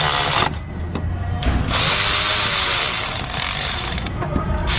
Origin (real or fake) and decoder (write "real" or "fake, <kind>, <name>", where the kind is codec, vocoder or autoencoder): real